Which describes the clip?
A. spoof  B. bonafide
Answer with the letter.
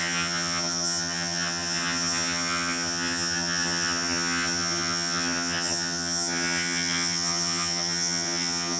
A